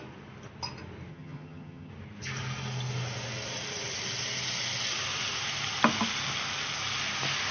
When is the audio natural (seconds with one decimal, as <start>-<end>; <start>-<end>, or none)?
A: 0.0-1.1; 1.9-7.5